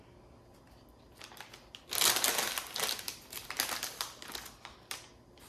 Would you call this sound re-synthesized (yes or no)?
no